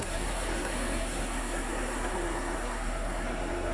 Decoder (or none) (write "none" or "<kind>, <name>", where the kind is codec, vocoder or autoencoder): codec, SNAC